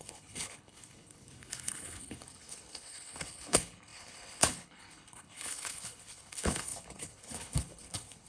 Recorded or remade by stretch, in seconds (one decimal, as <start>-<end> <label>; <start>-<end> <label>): 0.0-8.3 remade